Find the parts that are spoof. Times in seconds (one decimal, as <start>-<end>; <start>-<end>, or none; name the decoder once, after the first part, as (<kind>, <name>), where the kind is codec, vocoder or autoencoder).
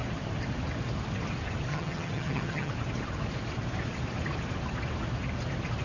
1.7-2.7 (vocoder, HiFi-GAN)